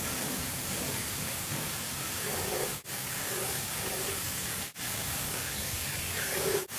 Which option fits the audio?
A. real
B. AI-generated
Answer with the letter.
B